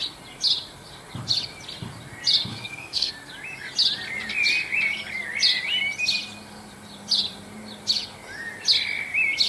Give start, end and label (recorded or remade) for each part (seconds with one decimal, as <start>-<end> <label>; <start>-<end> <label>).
0.0-2.5 recorded; 2.5-3.1 remade; 3.1-9.5 recorded